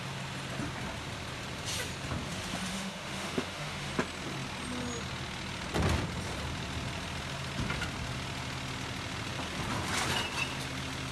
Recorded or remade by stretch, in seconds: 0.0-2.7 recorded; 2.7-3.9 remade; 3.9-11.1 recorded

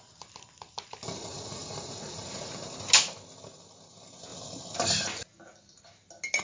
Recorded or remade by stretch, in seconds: 0.0-1.3 recorded; 1.3-2.5 remade; 2.5-6.4 recorded